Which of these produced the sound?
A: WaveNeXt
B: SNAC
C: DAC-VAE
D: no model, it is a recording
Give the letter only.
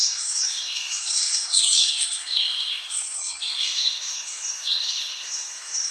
B